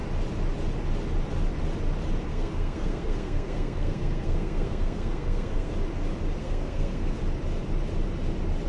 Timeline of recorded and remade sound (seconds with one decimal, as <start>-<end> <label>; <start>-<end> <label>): 0.0-2.3 recorded; 2.3-5.7 remade; 5.7-6.4 recorded; 6.4-7.2 remade; 7.2-8.7 recorded